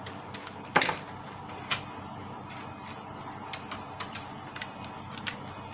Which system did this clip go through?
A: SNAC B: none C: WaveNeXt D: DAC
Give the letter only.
B